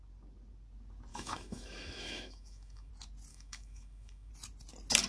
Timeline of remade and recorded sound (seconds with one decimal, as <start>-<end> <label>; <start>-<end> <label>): 0.0-1.1 recorded; 1.1-2.9 remade; 2.9-3.3 recorded; 3.3-4.3 remade; 4.3-5.1 recorded